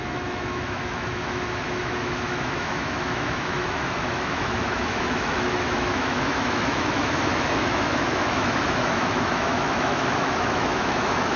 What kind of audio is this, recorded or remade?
remade